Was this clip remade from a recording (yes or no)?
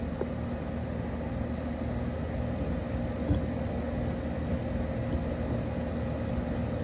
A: no